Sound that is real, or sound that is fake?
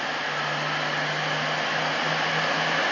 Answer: real